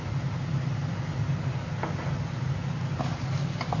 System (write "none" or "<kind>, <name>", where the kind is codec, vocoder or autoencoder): none